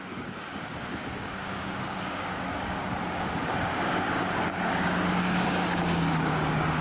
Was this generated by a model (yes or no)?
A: yes